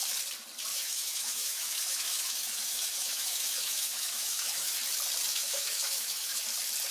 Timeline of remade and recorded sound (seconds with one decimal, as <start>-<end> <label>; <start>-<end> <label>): 0.0-0.7 recorded; 0.7-4.8 remade; 4.8-5.3 recorded; 5.3-6.4 remade; 6.4-6.9 recorded